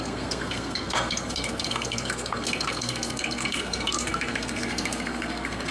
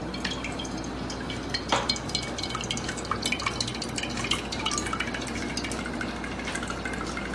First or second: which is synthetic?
first